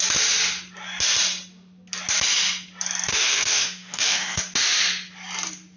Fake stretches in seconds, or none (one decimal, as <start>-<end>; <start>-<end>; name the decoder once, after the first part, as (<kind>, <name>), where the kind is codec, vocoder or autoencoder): 3.1-4.4 (autoencoder, DAC-VAE)